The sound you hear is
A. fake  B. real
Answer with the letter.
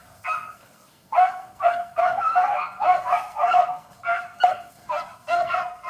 A